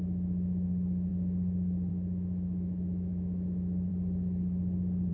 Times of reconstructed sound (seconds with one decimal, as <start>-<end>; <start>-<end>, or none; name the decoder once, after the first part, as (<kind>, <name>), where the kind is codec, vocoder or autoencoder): 0.0-1.1 (autoencoder, DAC-VAE); 1.9-3.9